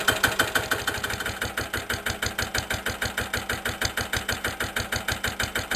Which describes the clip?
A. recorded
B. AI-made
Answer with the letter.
A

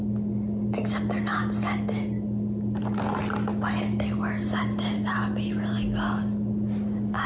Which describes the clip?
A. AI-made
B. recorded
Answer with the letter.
B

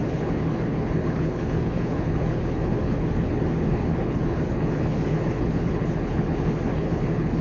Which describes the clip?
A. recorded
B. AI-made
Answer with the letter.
B